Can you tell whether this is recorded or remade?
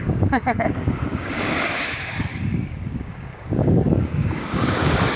remade